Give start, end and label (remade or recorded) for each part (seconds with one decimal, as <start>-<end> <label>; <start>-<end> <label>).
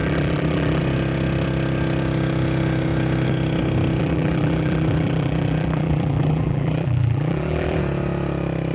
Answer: 0.0-0.8 remade; 0.8-4.0 recorded; 4.0-7.8 remade; 7.8-8.7 recorded